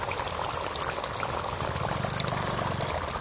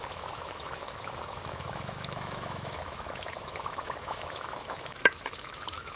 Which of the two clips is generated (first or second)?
second